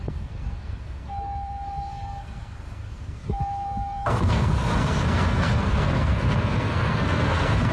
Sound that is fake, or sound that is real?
fake